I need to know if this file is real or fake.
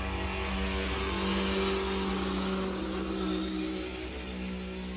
real